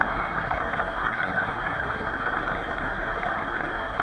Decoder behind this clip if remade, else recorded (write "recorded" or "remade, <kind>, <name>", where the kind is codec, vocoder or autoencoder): remade, codec, SNAC